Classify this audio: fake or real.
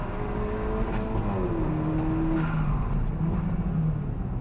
real